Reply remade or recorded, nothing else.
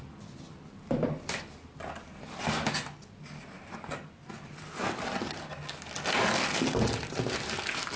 recorded